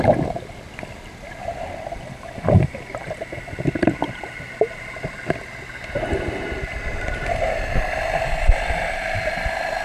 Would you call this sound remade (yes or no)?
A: no